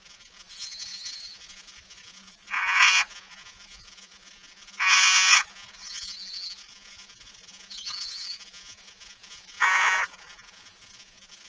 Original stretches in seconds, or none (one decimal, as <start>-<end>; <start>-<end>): none